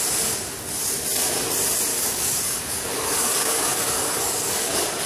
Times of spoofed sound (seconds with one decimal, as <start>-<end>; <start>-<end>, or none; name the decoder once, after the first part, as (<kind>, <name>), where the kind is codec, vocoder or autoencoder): 1.9-5.1 (codec, DAC)